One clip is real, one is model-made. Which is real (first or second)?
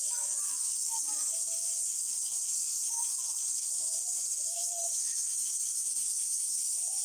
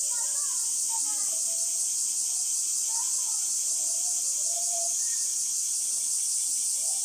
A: second